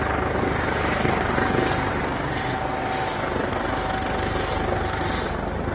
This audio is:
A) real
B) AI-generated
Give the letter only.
A